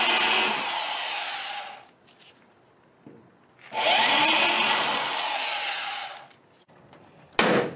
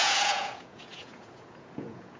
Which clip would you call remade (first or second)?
second